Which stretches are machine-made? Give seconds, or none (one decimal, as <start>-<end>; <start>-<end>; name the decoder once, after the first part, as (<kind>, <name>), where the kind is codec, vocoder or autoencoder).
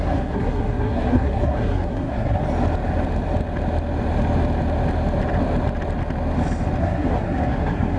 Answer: 0.0-2.4 (codec, SNAC); 6.8-8.0